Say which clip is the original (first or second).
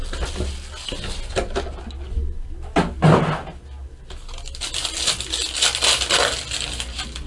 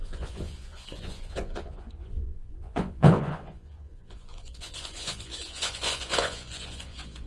first